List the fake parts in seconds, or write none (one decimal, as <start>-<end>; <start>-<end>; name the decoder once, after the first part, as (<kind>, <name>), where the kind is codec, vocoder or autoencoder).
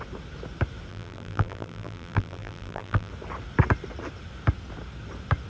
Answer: 0.9-3.1 (vocoder, BigVGAN v2)